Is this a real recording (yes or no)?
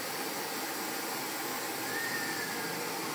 yes